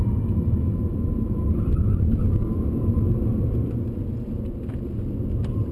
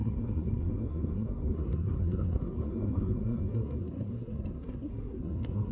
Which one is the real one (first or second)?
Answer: first